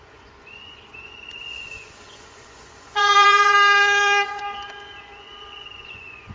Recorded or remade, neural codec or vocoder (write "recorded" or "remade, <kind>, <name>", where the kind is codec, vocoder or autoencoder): remade, vocoder, Vocos